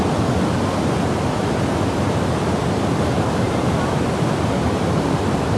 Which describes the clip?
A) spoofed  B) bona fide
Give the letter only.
B